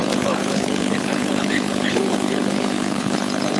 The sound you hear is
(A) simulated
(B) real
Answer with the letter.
A